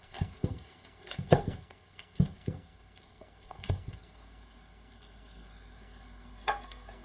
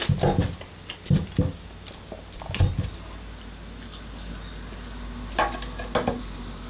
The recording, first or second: second